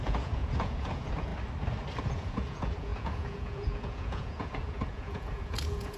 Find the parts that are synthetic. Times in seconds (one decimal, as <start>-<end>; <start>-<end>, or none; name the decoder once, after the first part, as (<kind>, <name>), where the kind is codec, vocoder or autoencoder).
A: 0.0-1.3 (vocoder, Vocos); 2.0-6.0